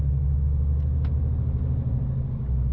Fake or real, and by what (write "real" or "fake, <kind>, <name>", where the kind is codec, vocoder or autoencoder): real